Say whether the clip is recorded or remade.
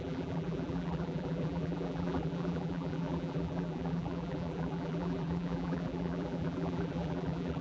remade